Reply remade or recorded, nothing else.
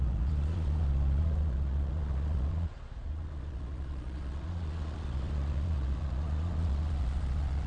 remade